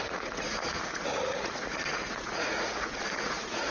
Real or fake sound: fake